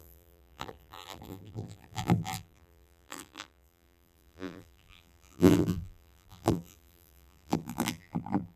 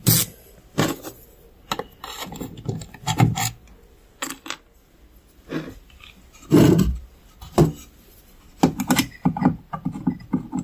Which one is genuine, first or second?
second